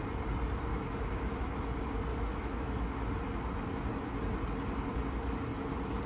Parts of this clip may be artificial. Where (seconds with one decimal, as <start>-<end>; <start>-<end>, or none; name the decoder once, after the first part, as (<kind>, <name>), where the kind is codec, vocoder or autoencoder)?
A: 0.7-1.4 (autoencoder, DAC-VAE); 2.1-3.0